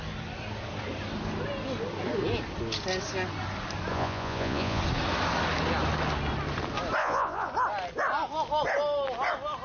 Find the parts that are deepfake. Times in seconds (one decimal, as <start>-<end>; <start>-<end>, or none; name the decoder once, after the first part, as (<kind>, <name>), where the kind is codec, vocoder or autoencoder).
3.9-4.8 (vocoder, Vocos); 7.0-7.5